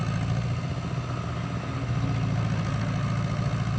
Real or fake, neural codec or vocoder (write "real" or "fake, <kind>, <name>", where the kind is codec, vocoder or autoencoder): real